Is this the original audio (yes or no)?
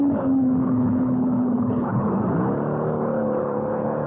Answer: no